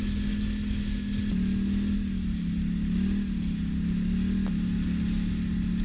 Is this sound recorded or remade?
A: recorded